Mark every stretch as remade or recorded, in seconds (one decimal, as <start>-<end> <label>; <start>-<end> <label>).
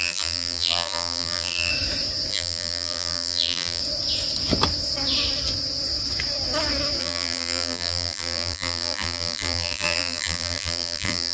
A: 0.0-1.7 remade; 1.7-2.3 recorded; 2.3-3.8 remade; 3.8-7.0 recorded; 7.0-11.3 remade